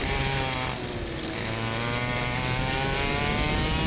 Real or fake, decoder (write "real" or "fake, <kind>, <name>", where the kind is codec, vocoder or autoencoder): real